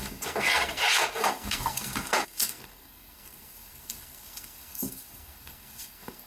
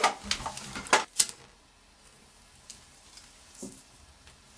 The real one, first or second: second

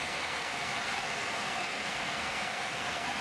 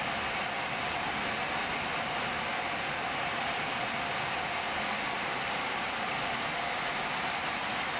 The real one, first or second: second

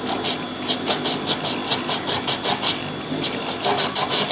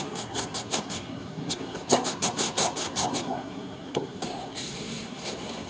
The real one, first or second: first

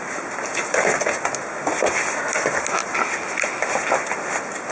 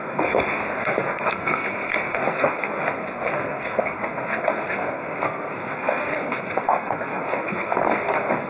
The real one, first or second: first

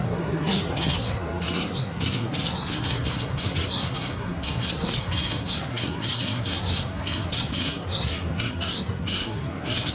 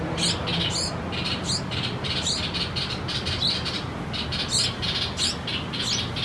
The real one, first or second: second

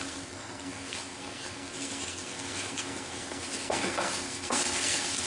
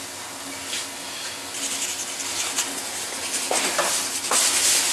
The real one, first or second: second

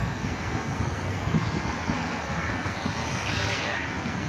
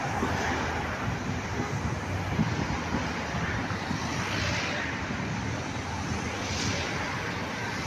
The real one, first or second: second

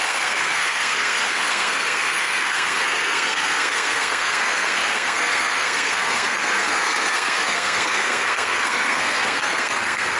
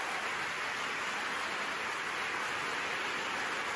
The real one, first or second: second